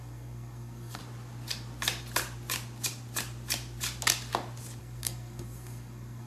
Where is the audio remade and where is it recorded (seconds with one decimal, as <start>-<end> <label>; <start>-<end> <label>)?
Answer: 0.0-1.0 remade; 1.0-4.8 recorded; 4.8-6.3 remade